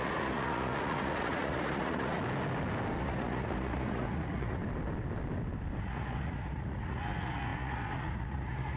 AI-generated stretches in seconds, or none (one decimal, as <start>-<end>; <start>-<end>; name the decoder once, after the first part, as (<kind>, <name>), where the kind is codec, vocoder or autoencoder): 0.0-2.2 (vocoder, Vocos); 3.0-4.6; 5.8-8.8